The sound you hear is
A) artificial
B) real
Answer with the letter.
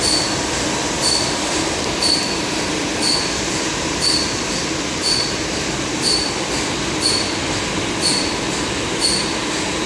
A